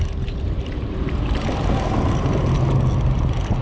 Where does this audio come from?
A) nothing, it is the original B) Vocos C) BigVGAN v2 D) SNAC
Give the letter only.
A